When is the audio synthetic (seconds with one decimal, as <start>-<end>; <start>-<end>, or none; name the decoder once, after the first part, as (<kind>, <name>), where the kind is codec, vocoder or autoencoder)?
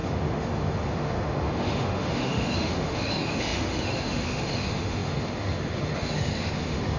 0.0-7.0 (autoencoder, DAC-VAE)